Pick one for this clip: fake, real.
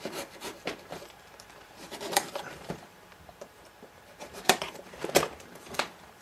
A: fake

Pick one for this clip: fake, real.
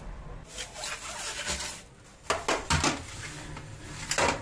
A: real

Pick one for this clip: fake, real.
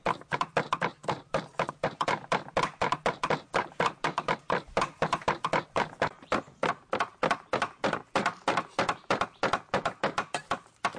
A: fake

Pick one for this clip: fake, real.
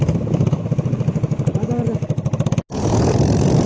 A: real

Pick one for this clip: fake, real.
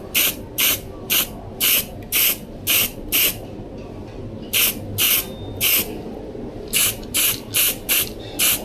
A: real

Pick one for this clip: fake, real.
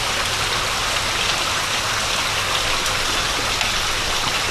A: real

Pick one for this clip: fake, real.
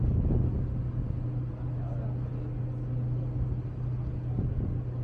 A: real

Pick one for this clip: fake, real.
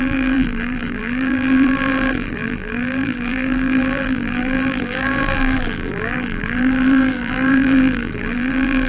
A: fake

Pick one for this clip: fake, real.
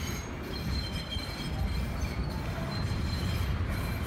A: fake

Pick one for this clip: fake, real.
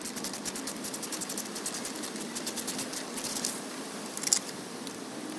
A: real